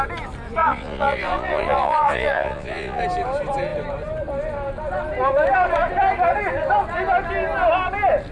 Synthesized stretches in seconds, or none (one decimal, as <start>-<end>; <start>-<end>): 0.6-3.0